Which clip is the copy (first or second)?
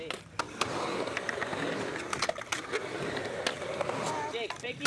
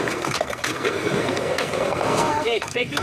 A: second